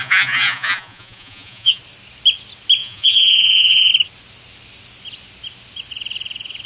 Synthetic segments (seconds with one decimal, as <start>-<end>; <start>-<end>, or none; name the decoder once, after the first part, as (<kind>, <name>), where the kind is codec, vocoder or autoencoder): 0.0-1.8 (vocoder, Vocos); 2.8-3.9